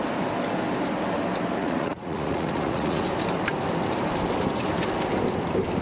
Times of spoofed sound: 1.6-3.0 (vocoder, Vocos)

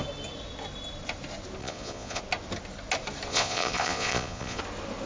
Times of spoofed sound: 1.6-2.2 (vocoder, Vocos); 3.3-4.6